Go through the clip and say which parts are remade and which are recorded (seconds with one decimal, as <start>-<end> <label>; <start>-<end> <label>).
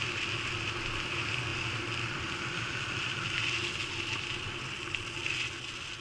0.0-6.0 recorded